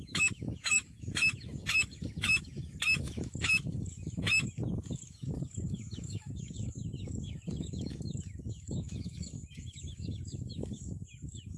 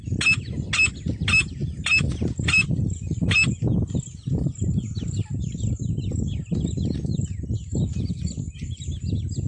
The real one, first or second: second